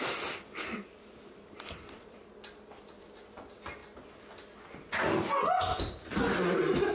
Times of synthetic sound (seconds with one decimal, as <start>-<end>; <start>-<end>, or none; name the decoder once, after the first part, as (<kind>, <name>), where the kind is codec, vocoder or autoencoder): 0.0-3.8 (vocoder, BigVGAN v2); 5.8-6.9